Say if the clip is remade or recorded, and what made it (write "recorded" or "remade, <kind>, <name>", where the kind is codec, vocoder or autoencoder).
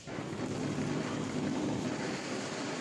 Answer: recorded